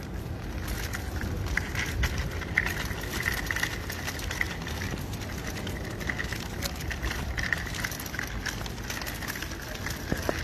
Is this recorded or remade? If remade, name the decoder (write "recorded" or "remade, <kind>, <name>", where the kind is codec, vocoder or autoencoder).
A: recorded